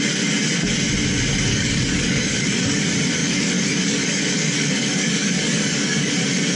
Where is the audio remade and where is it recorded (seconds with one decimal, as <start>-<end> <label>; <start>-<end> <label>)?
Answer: 0.0-1.5 recorded; 1.5-2.8 remade; 2.8-3.2 recorded; 3.2-6.1 remade; 6.1-6.6 recorded